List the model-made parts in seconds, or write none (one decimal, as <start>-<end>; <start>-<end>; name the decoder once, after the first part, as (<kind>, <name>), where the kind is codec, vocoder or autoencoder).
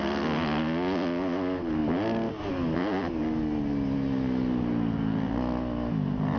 none